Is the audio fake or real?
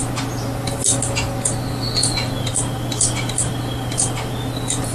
real